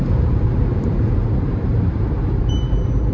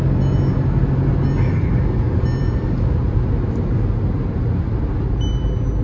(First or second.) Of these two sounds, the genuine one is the second